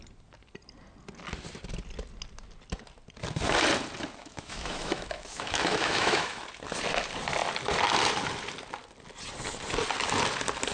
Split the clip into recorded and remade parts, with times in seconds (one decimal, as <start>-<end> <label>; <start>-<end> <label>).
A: 0.0-4.2 recorded; 4.2-6.4 remade; 6.4-10.7 recorded